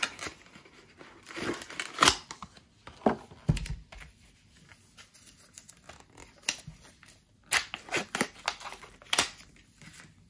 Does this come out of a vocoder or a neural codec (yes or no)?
no